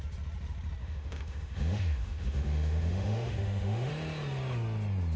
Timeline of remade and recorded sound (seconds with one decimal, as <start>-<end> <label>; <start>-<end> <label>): 0.0-0.8 recorded; 0.8-3.9 remade; 3.9-5.2 recorded